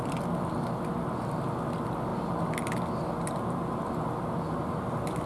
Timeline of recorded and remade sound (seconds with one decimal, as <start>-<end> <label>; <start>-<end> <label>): 0.0-5.3 recorded